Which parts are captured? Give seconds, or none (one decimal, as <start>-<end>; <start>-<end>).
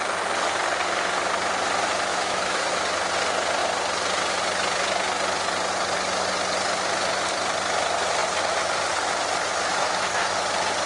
0.0-2.1; 2.7-9.7; 10.4-10.9